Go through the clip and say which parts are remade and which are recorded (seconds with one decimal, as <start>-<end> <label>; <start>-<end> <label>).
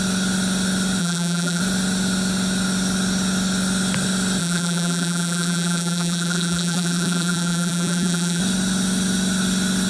0.0-1.0 recorded; 1.0-1.6 remade; 1.6-4.4 recorded; 4.4-8.4 remade; 8.4-9.9 recorded